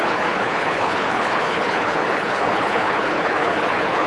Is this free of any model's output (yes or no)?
no